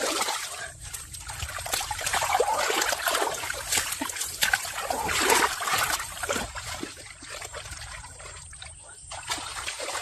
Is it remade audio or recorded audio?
remade